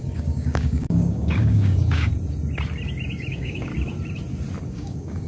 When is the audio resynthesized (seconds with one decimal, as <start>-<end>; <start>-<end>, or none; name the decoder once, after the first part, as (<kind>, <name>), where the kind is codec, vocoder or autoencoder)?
0.0-2.1 (codec, DAC); 3.3-3.7; 4.7-5.3

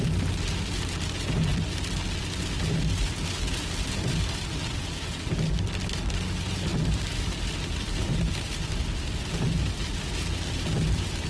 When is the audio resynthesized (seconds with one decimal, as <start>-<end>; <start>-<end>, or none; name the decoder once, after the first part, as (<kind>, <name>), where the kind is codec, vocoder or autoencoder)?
none